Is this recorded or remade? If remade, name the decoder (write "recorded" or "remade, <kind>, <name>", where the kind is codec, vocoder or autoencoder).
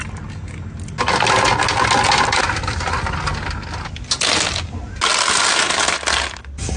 recorded